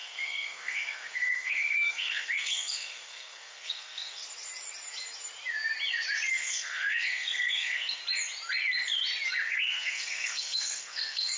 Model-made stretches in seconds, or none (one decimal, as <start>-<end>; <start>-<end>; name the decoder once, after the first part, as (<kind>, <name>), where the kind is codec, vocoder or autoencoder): 0.0-4.2 (codec, SNAC); 6.3-8.0; 9.5-11.4